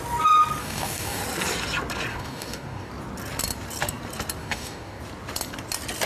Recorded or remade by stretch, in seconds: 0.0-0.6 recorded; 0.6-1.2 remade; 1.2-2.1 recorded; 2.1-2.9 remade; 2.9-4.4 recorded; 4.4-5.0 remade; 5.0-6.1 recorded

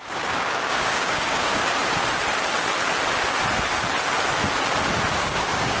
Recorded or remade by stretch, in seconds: 0.0-1.6 remade; 1.6-5.1 recorded; 5.1-5.8 remade

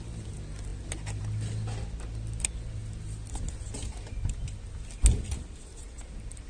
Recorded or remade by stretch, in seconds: 0.0-6.5 recorded

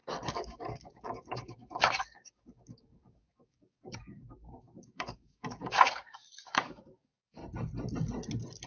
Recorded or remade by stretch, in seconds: 0.0-7.4 remade; 7.4-8.7 recorded

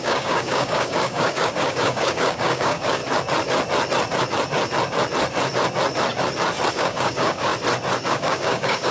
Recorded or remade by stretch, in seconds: 0.0-3.0 remade; 3.0-6.7 recorded; 6.7-7.5 remade; 7.5-8.1 recorded; 8.1-8.9 remade

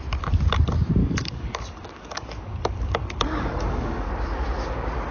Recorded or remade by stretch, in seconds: 0.0-1.0 recorded; 1.0-4.1 remade; 4.1-5.1 recorded

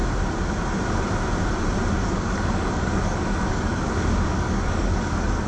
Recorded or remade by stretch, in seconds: 0.0-2.0 recorded; 2.0-5.5 remade

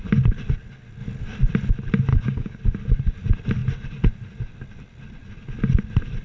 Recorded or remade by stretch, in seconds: 0.0-2.1 recorded; 2.1-2.6 remade; 2.6-6.2 recorded